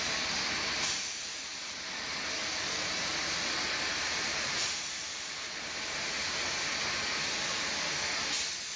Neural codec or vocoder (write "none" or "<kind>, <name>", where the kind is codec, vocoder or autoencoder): none